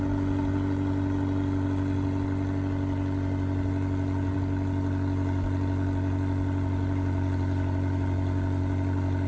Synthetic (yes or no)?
no